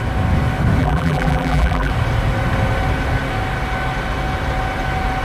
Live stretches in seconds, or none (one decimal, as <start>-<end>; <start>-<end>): 0.0-0.8; 1.9-5.2